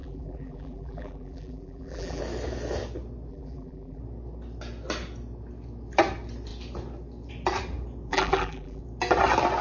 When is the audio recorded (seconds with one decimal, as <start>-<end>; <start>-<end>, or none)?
2.2-3.3; 4.0-8.1; 8.8-9.6